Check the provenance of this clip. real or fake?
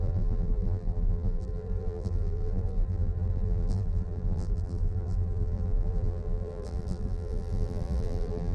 fake